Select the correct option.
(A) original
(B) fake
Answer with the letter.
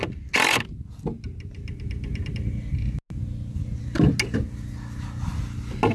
A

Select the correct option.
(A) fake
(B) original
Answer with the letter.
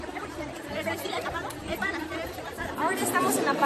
B